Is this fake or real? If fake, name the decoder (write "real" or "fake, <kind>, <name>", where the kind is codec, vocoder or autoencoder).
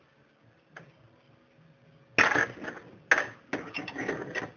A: real